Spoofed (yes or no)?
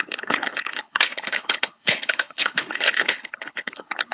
yes